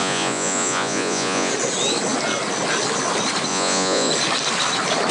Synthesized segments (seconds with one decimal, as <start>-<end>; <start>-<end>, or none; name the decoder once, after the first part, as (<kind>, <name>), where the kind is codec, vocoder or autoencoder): 0.0-1.5 (vocoder, Vocos); 3.5-4.1